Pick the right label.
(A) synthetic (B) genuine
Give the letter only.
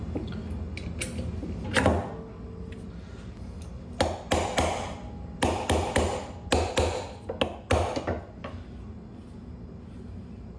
B